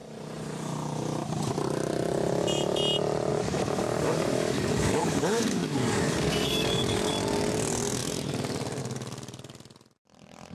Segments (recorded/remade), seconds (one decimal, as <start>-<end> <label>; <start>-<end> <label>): 0.0-3.3 recorded; 3.3-7.1 remade; 7.1-10.5 recorded